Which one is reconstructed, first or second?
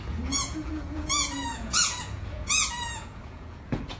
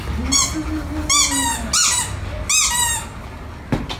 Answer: first